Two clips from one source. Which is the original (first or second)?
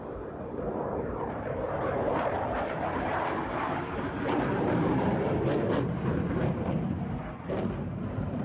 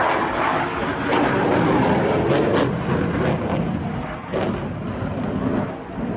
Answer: second